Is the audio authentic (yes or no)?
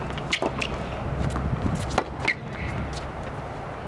yes